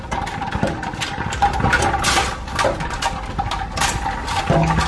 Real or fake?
real